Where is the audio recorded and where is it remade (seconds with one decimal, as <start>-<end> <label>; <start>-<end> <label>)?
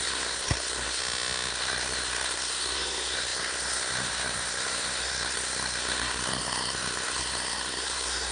0.0-1.0 remade; 1.0-1.5 recorded; 1.5-8.3 remade